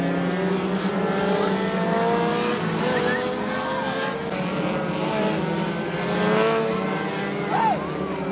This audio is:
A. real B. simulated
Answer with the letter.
A